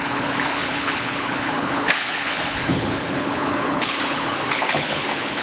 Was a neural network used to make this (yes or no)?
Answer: yes